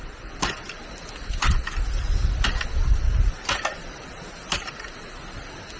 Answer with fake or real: real